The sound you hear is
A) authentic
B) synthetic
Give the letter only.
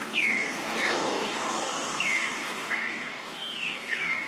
B